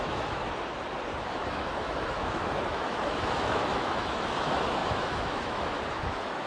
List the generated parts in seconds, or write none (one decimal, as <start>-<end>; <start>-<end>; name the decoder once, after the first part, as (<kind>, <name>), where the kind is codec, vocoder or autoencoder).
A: 0.0-0.4 (autoencoder, DAC-VAE); 1.2-6.5